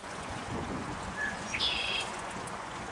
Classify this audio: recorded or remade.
remade